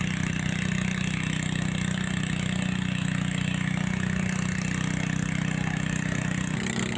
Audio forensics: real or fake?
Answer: real